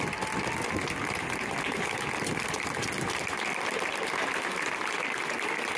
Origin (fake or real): real